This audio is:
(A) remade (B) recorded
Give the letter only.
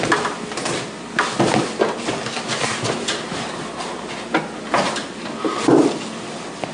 B